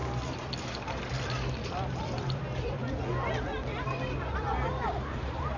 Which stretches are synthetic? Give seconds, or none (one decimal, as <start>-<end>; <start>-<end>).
2.0-2.8; 4.0-5.6